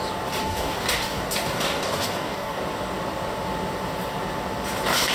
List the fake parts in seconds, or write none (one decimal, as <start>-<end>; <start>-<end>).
0.4-2.6